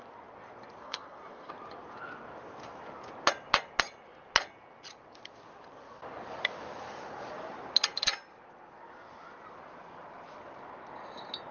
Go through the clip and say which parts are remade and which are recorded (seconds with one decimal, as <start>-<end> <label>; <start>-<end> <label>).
0.0-0.8 recorded; 0.8-1.5 remade; 1.5-11.5 recorded